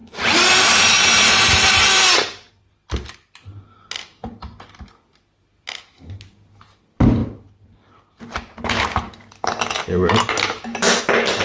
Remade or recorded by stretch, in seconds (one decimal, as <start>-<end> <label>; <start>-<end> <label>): 0.0-2.5 remade; 2.5-11.4 recorded